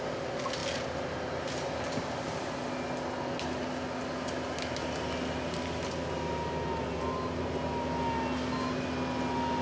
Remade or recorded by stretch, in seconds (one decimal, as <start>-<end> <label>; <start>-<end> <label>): 0.0-9.6 recorded